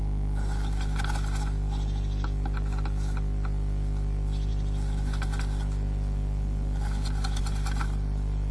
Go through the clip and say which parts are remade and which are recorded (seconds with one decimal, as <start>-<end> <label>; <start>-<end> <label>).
0.0-8.5 recorded